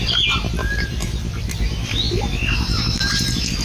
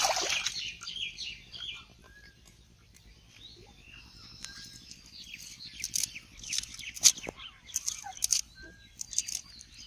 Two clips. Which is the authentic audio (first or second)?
first